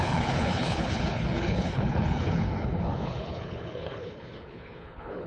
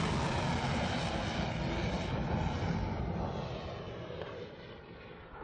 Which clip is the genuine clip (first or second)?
second